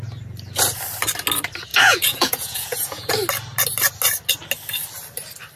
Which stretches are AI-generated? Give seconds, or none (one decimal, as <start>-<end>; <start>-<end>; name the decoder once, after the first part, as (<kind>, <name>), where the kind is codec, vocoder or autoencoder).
1.7-3.1 (vocoder, Vocos)